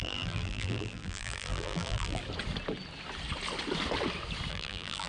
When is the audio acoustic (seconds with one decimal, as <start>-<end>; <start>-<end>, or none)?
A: 2.2-4.5